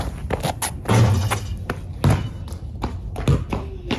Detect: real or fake real